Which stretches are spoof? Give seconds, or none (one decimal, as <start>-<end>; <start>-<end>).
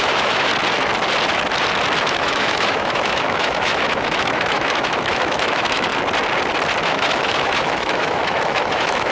0.0-0.5; 2.0-5.9; 6.8-9.1